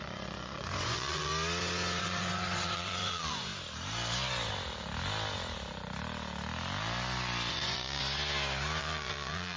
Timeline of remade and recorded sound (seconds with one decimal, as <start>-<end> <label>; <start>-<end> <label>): 0.0-1.3 remade; 1.3-2.0 recorded; 2.0-3.5 remade; 3.5-7.5 recorded; 7.5-8.0 remade; 8.0-8.8 recorded; 8.8-9.6 remade